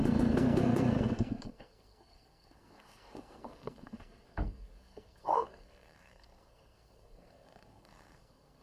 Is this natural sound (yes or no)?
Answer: no